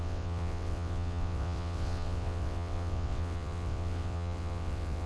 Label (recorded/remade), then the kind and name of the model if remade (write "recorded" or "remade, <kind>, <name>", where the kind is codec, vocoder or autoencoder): remade, vocoder, WaveNeXt